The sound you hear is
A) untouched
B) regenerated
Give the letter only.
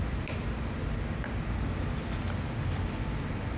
A